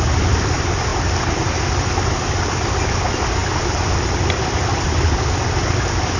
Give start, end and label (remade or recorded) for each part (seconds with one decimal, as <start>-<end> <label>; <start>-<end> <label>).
0.0-6.2 recorded